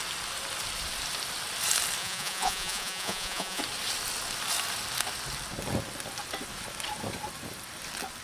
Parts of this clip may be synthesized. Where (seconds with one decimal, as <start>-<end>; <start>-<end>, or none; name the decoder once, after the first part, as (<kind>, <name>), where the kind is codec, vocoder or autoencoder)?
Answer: 2.0-3.6 (vocoder, Vocos)